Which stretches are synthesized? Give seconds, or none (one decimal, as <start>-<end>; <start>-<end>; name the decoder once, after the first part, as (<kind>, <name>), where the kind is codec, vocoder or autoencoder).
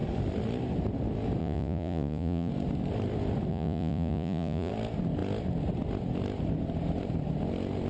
1.4-2.5 (vocoder, Vocos); 3.5-4.7